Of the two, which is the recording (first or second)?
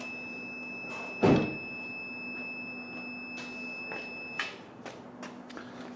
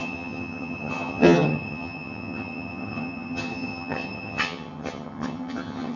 first